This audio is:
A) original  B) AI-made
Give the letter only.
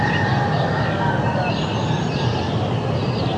A